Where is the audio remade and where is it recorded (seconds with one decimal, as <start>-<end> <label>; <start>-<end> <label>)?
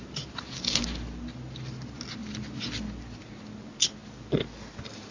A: 0.0-5.1 recorded